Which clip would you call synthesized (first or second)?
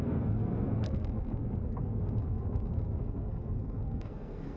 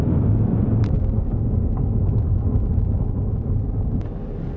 first